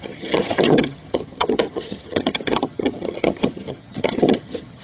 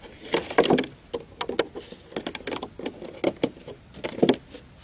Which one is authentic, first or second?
second